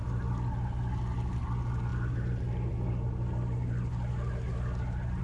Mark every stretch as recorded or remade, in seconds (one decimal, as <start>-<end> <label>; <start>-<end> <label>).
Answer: 0.0-5.2 recorded